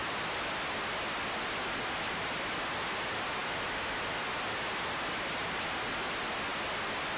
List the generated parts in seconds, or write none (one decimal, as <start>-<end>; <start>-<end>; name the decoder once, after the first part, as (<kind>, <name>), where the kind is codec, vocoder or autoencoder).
none